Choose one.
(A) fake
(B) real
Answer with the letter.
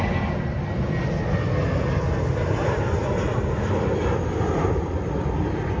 B